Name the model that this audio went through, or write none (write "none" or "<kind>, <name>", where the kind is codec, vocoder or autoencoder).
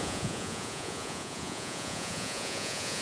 vocoder, Vocos